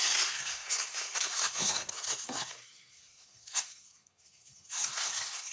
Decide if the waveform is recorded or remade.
remade